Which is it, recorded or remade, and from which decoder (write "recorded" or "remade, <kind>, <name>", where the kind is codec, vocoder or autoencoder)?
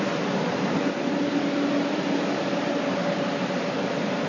recorded